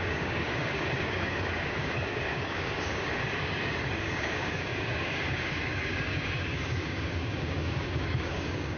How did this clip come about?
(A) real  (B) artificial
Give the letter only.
B